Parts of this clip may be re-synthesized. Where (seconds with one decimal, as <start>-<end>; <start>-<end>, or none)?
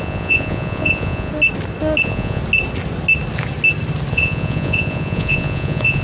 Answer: 0.0-1.3; 2.0-2.4; 4.1-6.0